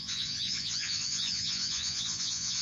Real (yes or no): no